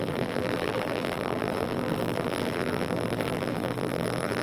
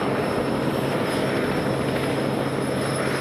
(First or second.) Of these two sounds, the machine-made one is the first